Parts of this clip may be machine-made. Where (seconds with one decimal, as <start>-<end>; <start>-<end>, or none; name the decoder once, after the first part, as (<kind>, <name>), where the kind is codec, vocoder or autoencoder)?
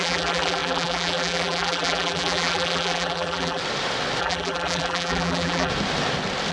0.0-3.6 (vocoder, BigVGAN v2); 4.2-5.7